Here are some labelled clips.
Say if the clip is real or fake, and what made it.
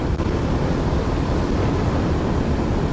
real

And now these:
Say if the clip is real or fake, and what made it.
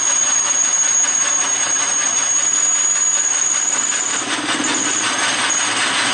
real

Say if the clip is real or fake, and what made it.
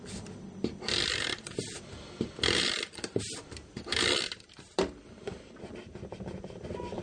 real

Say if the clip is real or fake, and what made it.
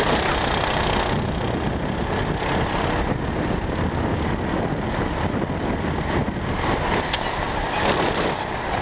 real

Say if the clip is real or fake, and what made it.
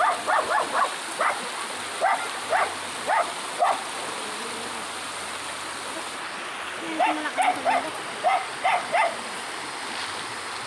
real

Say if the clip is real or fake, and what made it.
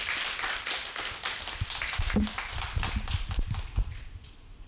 real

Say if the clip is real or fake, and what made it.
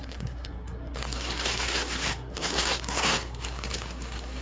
fake, codec, SNAC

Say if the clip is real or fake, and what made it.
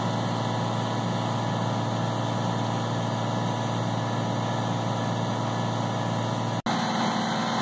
real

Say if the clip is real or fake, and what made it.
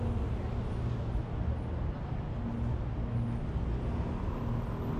real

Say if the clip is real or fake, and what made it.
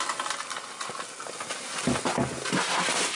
real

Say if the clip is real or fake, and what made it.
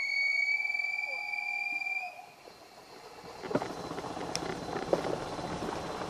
real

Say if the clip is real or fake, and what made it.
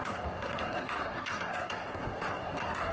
fake, codec, SNAC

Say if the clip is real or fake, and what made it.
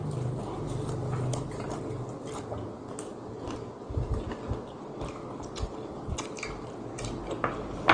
real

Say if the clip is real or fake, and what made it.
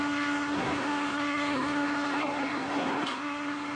fake, codec, SNAC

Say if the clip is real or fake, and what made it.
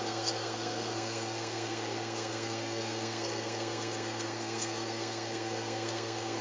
fake, codec, SNAC